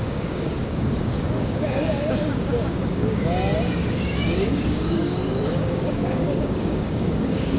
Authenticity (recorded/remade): remade